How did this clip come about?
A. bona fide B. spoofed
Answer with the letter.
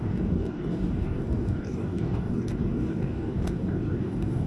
B